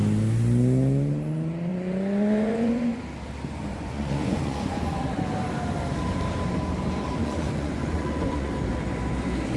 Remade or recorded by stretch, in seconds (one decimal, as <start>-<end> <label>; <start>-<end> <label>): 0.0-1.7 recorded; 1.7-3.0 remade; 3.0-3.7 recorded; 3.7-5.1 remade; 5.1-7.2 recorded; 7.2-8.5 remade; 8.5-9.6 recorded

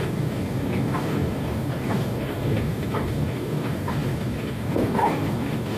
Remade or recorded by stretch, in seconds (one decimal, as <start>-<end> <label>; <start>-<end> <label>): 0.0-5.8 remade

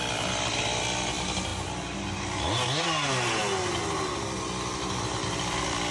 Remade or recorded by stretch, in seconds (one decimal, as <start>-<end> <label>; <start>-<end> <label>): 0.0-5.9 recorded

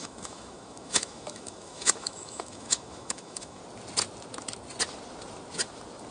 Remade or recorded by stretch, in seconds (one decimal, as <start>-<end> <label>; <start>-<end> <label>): 0.0-3.6 remade; 3.6-6.1 recorded

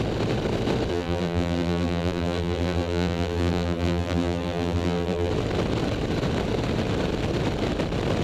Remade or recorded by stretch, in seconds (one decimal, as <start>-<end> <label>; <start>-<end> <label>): 0.0-0.9 recorded; 0.9-5.3 remade; 5.3-8.2 recorded

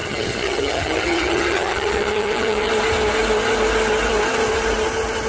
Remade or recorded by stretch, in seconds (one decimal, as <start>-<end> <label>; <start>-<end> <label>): 0.0-2.7 remade; 2.7-5.3 recorded

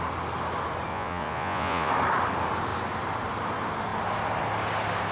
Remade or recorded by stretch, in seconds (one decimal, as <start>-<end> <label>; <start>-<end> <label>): 0.0-0.9 recorded; 0.9-1.9 remade; 1.9-5.1 recorded

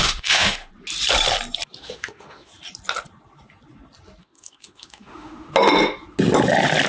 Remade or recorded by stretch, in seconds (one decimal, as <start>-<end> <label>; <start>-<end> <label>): 0.0-0.7 remade; 0.7-1.8 recorded; 1.8-2.5 remade; 2.5-4.2 recorded; 4.2-5.5 remade; 5.5-6.9 recorded